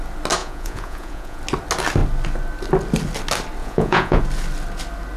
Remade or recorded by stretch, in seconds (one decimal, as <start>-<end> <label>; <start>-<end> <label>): 0.0-0.4 recorded; 0.4-1.4 remade; 1.4-3.6 recorded; 3.6-4.2 remade; 4.2-5.2 recorded